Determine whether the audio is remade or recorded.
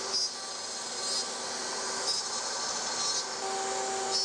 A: recorded